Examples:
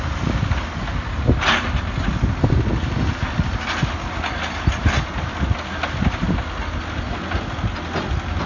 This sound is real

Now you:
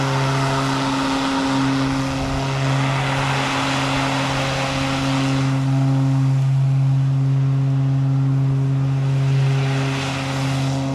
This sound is real